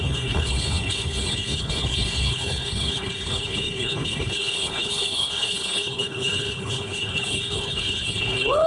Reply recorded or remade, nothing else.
remade